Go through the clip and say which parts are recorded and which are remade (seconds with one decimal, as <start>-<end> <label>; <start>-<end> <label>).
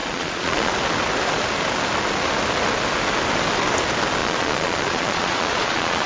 0.0-0.7 remade; 0.7-4.2 recorded; 4.2-6.1 remade